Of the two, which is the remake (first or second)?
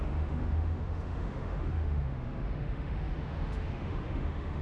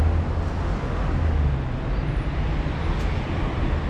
first